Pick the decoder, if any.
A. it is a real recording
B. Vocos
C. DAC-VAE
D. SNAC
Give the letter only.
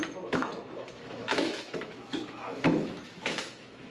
C